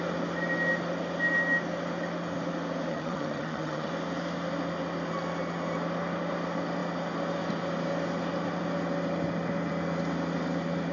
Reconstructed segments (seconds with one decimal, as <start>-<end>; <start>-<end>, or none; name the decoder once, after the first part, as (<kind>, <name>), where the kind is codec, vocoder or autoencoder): 2.9-3.9 (vocoder, HiFi-GAN)